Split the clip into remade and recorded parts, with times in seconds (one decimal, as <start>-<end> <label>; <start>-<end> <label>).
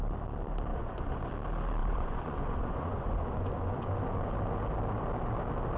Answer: 0.0-0.7 recorded; 0.7-1.3 remade; 1.3-1.8 recorded; 1.8-3.9 remade; 3.9-5.8 recorded